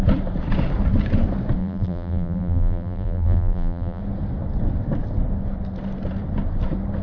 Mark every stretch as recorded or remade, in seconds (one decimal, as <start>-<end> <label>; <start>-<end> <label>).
0.0-1.6 recorded; 1.6-4.0 remade; 4.0-7.0 recorded

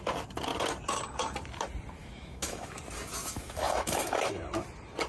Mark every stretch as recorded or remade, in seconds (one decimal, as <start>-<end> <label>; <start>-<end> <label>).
0.0-2.0 recorded; 2.0-2.8 remade; 2.8-3.2 recorded; 3.2-4.4 remade; 4.4-5.1 recorded

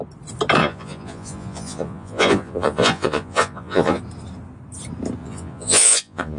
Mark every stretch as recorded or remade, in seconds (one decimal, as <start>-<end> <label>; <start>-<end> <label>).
0.0-0.6 recorded; 0.6-4.0 remade; 4.0-5.2 recorded; 5.2-6.4 remade

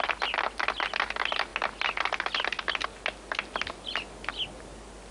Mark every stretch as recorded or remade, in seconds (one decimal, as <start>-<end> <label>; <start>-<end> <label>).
0.0-5.1 recorded

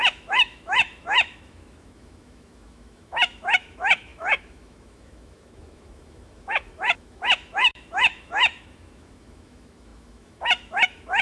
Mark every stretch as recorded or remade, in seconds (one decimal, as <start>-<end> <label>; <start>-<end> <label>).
0.0-11.2 remade

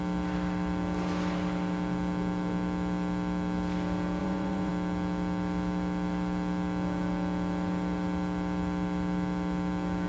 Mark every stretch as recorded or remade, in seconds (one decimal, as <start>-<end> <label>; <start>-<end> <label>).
0.0-4.2 recorded; 4.2-4.7 remade; 4.7-10.1 recorded